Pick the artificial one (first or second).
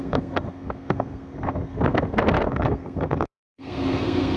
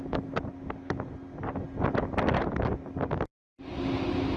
first